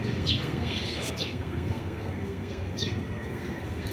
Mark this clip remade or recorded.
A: remade